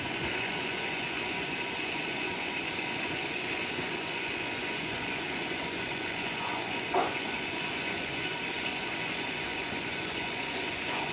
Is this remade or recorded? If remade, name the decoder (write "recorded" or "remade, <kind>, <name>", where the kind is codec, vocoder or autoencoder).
remade, vocoder, Vocos